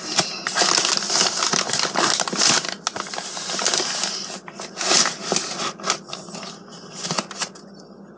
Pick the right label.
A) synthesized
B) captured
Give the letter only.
B